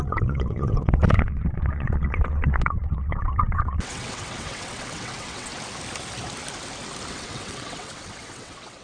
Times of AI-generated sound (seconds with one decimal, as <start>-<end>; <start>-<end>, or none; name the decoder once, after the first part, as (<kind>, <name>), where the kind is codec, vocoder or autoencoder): 0.0-5.5 (vocoder, WaveNeXt); 7.1-8.8